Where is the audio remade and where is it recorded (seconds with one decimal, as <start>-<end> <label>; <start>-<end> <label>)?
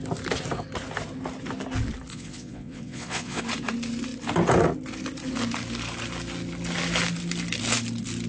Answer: 0.0-2.1 recorded; 2.1-3.4 remade; 3.4-8.3 recorded